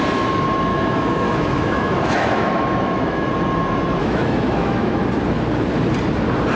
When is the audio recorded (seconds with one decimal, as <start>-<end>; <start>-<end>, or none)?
0.0-0.7; 3.3-4.0; 5.0-6.6